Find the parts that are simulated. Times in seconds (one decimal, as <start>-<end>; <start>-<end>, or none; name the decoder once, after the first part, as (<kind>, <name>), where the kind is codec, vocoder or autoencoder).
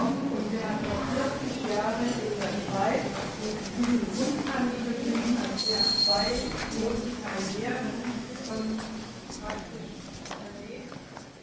7.3-8.5 (autoencoder, DAC-VAE)